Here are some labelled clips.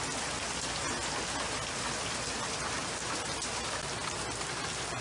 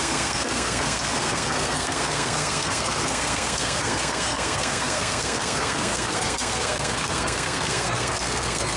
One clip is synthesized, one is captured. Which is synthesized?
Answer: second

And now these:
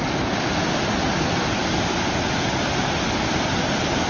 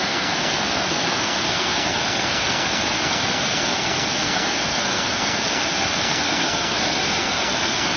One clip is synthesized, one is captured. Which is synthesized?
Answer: second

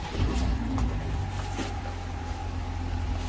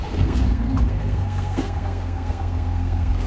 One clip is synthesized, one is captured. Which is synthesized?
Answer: second